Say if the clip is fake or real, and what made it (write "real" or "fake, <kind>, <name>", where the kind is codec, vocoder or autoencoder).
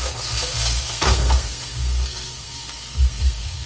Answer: fake, codec, SNAC